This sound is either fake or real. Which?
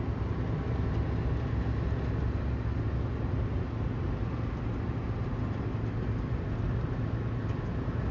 real